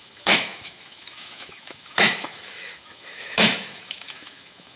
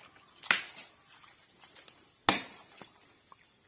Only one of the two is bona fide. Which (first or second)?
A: second